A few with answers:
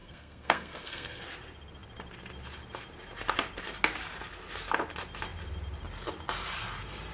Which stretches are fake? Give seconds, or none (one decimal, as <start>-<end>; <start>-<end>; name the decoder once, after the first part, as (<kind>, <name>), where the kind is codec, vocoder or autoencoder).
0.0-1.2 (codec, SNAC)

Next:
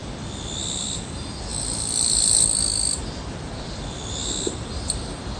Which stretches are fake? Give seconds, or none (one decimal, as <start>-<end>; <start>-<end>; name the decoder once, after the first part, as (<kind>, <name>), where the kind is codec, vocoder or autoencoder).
none

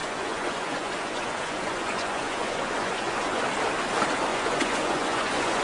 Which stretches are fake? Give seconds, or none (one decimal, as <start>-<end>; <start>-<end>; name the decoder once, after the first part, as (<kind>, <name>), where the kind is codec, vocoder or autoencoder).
0.0-3.4 (vocoder, Vocos); 4.3-5.6

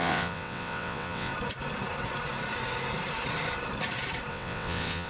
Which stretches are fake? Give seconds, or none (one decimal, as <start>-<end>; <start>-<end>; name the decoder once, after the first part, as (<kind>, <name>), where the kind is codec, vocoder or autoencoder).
0.0-1.3 (vocoder, WaveNeXt); 4.3-5.1

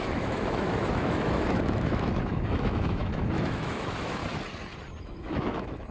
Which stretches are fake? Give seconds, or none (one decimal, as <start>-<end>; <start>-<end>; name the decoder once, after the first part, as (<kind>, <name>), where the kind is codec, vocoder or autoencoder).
0.0-4.2 (autoencoder, DAC-VAE); 5.0-5.9

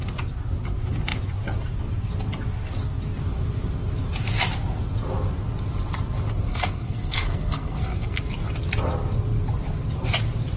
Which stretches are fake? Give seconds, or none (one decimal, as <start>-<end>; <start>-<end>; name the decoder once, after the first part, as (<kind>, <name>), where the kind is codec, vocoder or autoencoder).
6.5-8.2 (codec, SNAC)

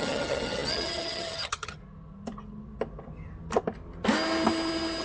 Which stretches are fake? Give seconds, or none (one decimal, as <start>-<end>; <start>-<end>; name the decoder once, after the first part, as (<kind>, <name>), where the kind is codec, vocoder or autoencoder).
0.0-1.8 (vocoder, HiFi-GAN)